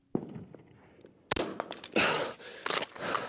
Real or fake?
real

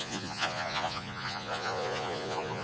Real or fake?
fake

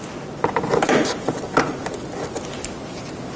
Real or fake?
real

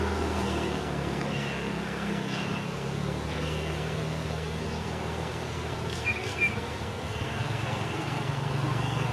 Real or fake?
fake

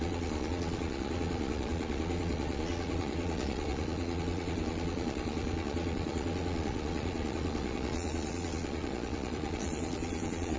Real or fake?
fake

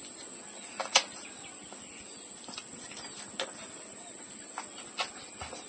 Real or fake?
real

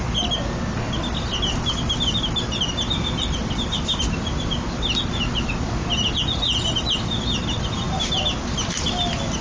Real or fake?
real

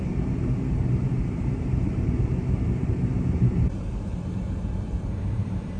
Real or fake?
fake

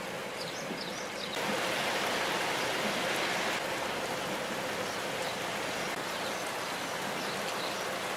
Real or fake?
real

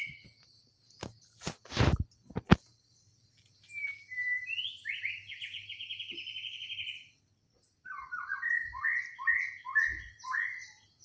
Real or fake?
real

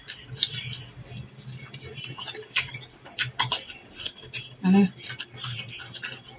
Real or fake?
real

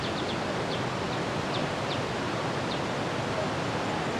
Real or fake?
real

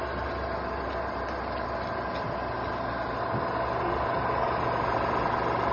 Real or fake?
real